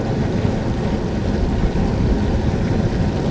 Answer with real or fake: real